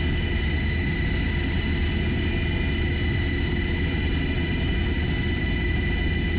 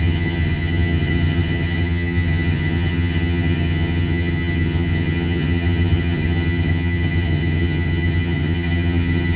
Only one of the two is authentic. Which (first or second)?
first